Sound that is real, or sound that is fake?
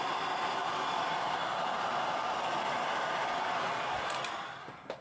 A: real